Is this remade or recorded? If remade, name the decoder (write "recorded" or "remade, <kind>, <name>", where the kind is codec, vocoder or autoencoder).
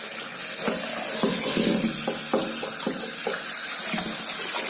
recorded